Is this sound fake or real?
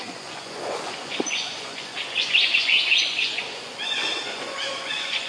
fake